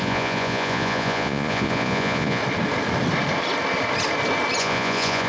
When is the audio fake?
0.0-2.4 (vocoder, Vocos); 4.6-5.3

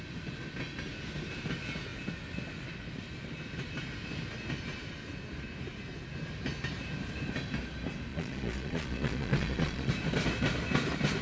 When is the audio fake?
8.1-9.9 (vocoder, Vocos)

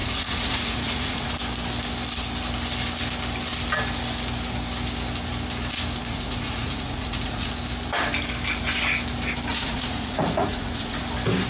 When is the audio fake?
0.0-1.3 (vocoder, Vocos); 6.1-7.5; 9.5-11.0

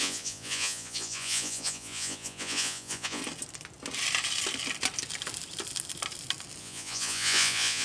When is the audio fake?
0.0-3.2 (vocoder, Vocos); 6.6-7.8

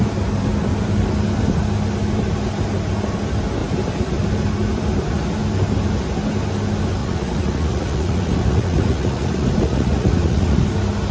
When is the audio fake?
7.0-10.6 (vocoder, Vocos)

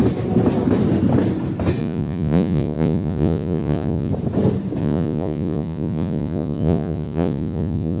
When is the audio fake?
1.8-4.1 (vocoder, Vocos); 4.8-8.0

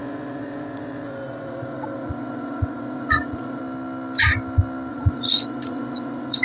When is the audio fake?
0.0-3.6 (vocoder, Vocos); 4.9-6.4